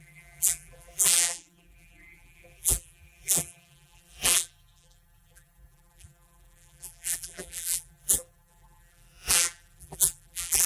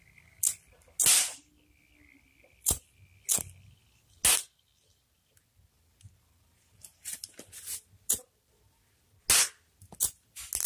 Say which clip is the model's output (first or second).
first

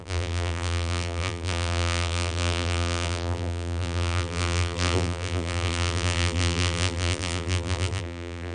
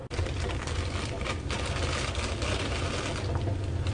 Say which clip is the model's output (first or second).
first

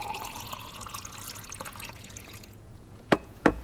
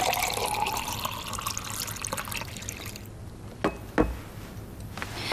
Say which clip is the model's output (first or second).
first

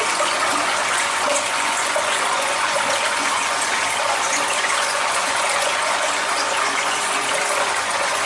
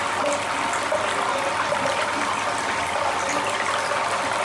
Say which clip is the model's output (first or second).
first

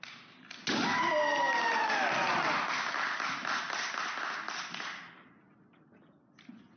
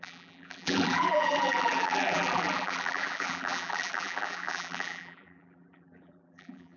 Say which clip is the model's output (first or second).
second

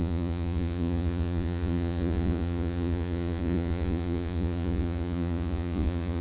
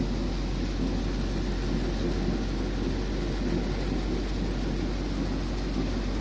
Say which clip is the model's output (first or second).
first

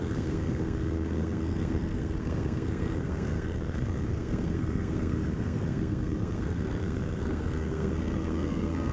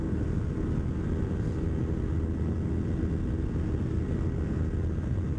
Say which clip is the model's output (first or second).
first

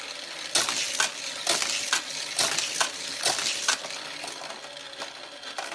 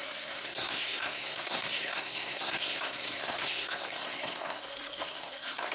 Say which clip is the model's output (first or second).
second